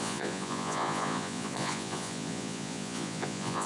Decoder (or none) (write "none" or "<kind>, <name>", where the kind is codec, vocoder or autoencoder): vocoder, Vocos